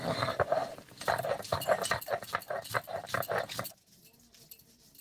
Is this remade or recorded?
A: recorded